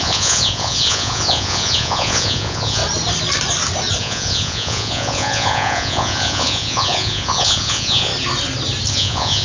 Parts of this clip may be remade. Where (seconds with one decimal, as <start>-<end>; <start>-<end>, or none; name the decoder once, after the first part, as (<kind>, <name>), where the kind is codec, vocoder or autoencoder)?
0.0-2.8 (vocoder, Vocos); 4.0-8.1; 8.9-9.4